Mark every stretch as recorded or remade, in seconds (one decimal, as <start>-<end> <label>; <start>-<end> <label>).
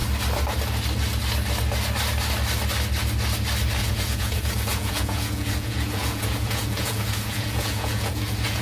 0.0-3.8 recorded; 3.8-8.6 remade